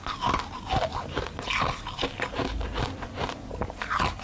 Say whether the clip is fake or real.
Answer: real